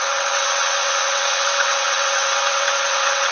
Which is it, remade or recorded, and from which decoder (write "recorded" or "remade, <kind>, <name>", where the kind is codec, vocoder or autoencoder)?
remade, vocoder, WaveNeXt